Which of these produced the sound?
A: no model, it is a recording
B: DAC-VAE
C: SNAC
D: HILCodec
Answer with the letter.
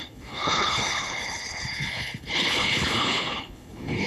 D